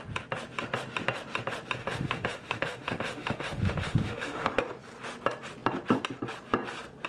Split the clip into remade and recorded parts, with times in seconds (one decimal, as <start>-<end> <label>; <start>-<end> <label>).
0.0-1.8 recorded; 1.8-4.5 remade; 4.5-7.1 recorded